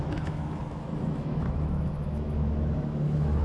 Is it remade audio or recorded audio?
remade